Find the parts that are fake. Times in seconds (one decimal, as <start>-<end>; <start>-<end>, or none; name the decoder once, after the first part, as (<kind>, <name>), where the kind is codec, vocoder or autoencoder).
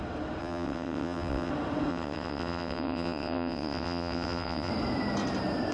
0.4-1.5 (vocoder, WaveNeXt); 1.9-4.7